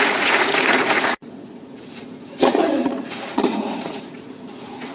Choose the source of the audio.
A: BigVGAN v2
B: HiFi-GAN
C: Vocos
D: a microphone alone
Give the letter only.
C